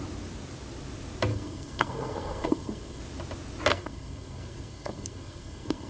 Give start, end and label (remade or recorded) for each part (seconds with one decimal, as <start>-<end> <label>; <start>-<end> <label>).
0.0-1.3 recorded; 1.3-3.0 remade; 3.0-3.7 recorded; 3.7-5.9 remade